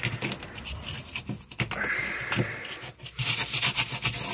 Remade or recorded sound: recorded